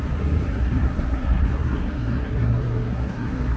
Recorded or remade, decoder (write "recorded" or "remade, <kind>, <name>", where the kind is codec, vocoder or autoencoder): remade, codec, SNAC